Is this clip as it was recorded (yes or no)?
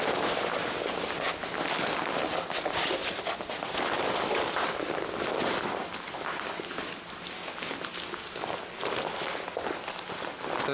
yes